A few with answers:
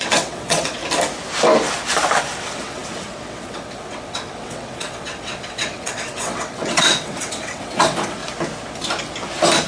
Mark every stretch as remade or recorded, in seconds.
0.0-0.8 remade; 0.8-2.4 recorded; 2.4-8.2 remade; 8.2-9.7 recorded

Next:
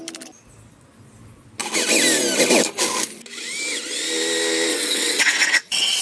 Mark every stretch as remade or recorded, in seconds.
0.0-4.7 recorded; 4.7-6.0 remade

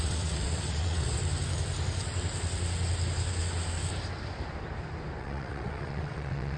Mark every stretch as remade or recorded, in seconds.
0.0-1.2 remade; 1.2-5.2 recorded; 5.2-6.6 remade

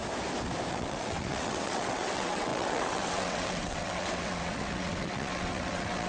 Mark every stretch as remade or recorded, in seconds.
0.0-0.7 recorded; 0.7-6.1 remade

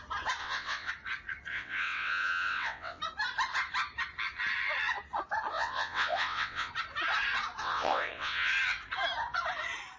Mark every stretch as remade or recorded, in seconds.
0.0-0.4 recorded; 0.4-0.9 remade; 0.9-1.5 recorded; 1.5-3.0 remade; 3.0-5.5 recorded; 5.5-6.7 remade; 6.7-7.6 recorded; 7.6-8.5 remade; 8.5-10.0 recorded